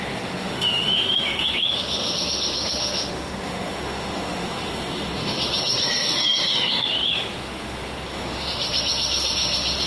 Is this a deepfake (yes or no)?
yes